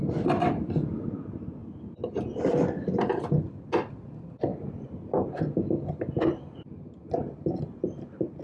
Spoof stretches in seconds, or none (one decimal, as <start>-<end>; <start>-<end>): none